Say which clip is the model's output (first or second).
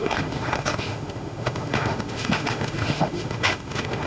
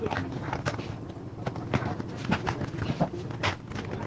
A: first